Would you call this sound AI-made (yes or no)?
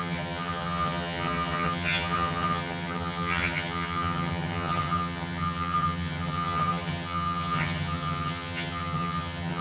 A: yes